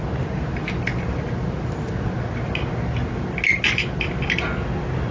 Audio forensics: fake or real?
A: real